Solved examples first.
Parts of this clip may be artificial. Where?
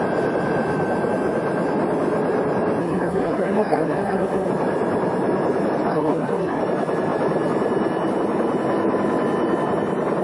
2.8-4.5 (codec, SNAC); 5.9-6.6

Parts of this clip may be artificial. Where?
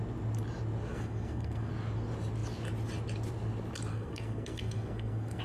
0.9-1.7 (codec, SNAC); 3.9-5.4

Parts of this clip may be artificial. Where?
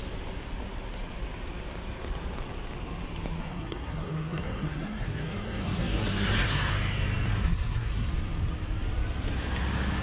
3.4-6.7 (codec, SNAC); 7.3-8.1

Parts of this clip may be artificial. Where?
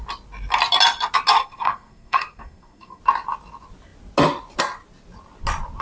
1.4-3.0 (codec, SNAC)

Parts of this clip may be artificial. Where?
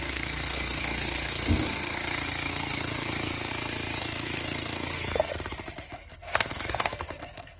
0.0-3.5 (codec, SNAC); 4.0-5.3; 6.0-7.6